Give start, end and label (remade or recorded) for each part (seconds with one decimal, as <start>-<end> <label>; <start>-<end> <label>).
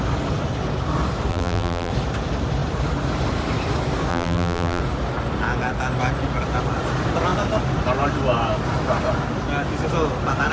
0.0-1.3 recorded; 1.3-1.9 remade; 1.9-4.1 recorded; 4.1-4.8 remade; 4.8-10.5 recorded